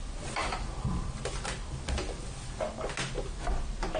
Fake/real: real